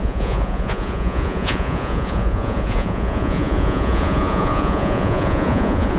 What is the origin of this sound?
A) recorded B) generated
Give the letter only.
B